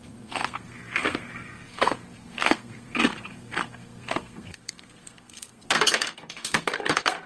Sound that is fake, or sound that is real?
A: fake